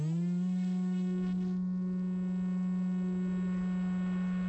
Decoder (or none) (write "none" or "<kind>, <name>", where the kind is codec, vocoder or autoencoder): none